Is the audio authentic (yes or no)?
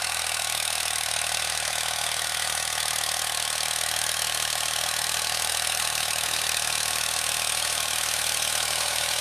no